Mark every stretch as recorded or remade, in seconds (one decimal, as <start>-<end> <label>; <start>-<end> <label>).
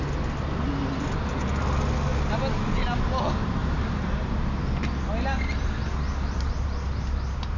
0.0-3.6 recorded; 3.6-4.3 remade; 4.3-7.6 recorded